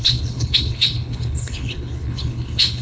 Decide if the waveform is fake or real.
fake